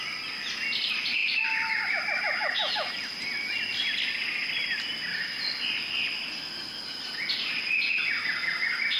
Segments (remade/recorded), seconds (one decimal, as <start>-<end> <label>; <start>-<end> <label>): 0.0-9.0 recorded